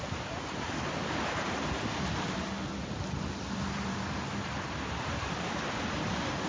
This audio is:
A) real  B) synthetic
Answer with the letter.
A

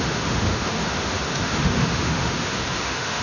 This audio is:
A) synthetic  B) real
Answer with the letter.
A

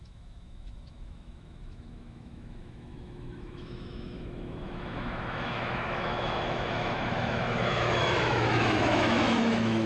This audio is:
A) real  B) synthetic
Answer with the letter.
B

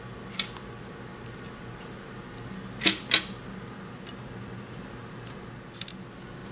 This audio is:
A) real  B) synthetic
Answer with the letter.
A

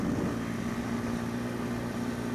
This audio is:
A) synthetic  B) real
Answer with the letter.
B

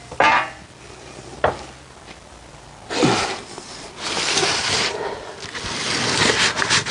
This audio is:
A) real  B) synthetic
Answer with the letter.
A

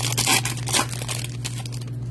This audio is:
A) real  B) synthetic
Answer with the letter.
A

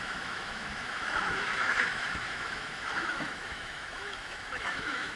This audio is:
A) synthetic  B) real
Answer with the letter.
A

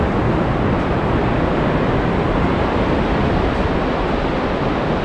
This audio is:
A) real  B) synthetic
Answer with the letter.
A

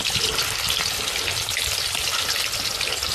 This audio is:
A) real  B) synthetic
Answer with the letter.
A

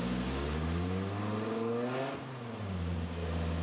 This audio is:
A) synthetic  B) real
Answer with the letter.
B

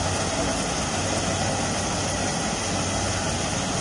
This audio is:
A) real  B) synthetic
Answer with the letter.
A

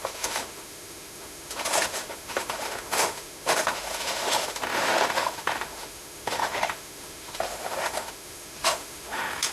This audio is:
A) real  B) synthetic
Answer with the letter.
B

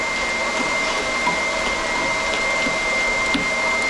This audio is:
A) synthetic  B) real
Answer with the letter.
B